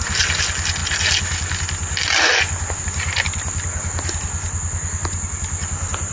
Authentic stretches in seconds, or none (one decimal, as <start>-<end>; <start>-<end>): 0.0-6.1